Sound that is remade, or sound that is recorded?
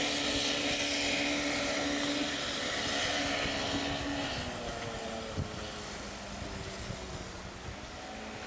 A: recorded